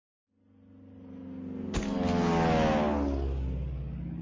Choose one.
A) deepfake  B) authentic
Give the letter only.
B